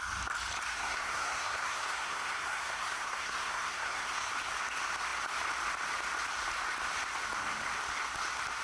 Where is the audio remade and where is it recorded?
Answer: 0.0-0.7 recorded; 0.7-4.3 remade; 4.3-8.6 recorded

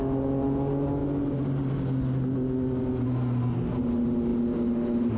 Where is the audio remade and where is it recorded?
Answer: 0.0-5.2 recorded

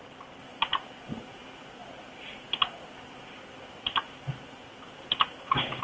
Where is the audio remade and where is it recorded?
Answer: 0.0-5.8 recorded

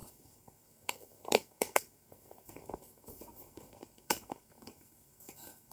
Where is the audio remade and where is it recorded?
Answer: 0.0-5.7 remade

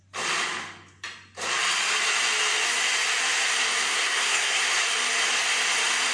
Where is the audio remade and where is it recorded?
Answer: 0.0-3.8 recorded; 3.8-4.6 remade; 4.6-6.1 recorded

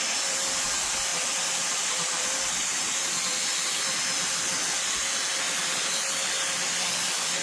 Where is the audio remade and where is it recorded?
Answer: 0.0-7.4 recorded